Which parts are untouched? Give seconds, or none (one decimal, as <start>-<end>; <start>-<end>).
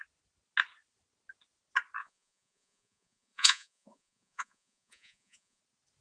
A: 0.0-2.0; 5.6-6.0